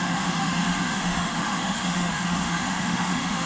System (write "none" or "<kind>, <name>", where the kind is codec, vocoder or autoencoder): autoencoder, DAC-VAE